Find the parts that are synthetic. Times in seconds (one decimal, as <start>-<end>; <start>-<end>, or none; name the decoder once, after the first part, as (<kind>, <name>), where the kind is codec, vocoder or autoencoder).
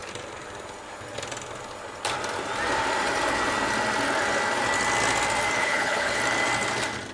5.6-6.2 (codec, HILCodec)